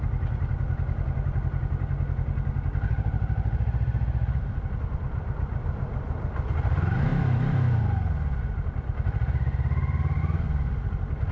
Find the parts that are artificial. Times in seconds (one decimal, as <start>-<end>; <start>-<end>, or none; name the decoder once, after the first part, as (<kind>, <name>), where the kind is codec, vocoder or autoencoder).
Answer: none